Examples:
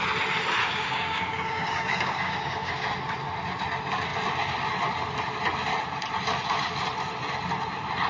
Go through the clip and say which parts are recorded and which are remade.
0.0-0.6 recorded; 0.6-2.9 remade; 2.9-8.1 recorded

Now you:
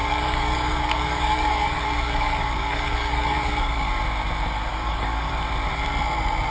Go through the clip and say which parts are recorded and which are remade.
0.0-3.9 remade; 3.9-4.7 recorded; 4.7-5.3 remade; 5.3-6.5 recorded

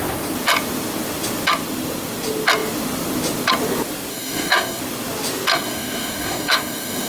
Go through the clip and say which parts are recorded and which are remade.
0.0-4.1 recorded; 4.1-4.8 remade; 4.8-5.5 recorded; 5.5-7.1 remade